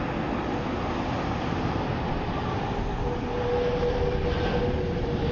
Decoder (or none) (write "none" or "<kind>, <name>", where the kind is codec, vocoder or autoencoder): none